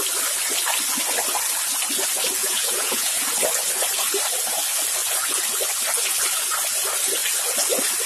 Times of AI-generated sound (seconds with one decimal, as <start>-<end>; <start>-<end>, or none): 2.4-3.2